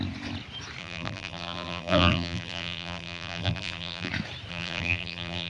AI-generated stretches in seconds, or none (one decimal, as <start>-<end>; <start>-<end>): 0.8-4.1; 4.5-5.5